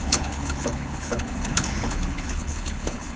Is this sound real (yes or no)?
no